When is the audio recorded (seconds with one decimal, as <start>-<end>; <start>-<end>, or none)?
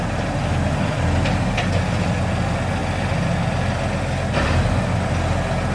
0.0-5.7